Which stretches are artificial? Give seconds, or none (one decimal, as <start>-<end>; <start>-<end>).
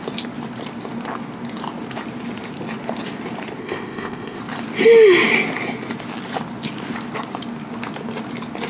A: 3.6-4.4